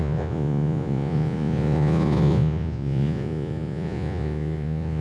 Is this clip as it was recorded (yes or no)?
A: no